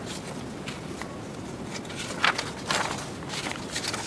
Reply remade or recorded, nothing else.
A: recorded